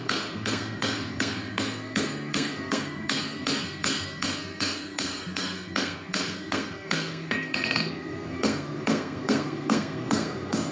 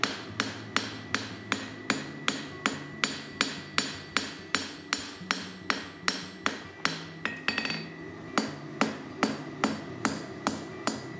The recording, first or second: second